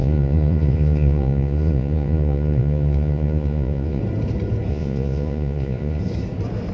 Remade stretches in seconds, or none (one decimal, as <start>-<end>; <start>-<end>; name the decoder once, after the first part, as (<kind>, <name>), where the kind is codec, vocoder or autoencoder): 0.0-4.0 (vocoder, Vocos); 4.7-6.0